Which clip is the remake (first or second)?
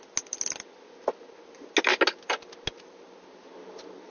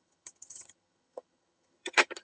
second